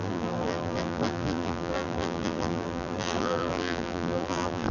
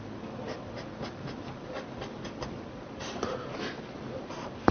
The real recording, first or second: second